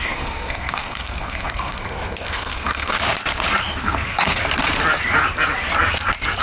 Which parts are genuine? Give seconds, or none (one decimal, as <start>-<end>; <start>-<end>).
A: 3.0-3.8; 4.4-6.4